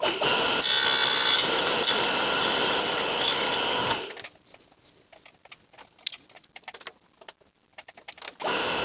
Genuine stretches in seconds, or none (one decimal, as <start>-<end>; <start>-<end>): 0.0-8.8